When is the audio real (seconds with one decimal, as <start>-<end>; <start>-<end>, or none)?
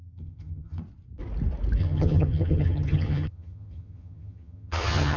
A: 0.8-1.8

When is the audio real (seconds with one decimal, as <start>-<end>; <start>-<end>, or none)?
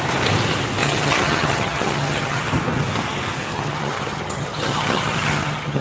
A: 0.0-0.8; 2.4-3.5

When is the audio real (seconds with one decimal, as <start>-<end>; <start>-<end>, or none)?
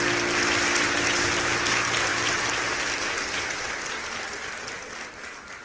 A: 0.0-5.6